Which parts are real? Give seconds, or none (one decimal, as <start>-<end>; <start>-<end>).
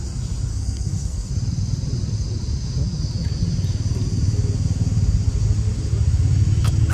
0.0-0.5; 1.3-6.9